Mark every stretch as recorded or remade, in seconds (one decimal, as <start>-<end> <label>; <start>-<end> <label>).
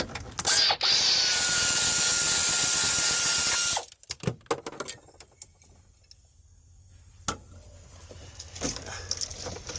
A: 0.0-9.8 recorded